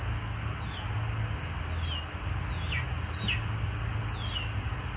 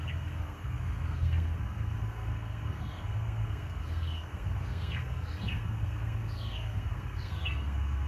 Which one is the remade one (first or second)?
second